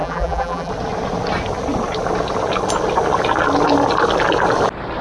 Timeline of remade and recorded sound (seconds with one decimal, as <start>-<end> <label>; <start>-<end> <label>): 0.0-0.7 remade; 0.7-5.0 recorded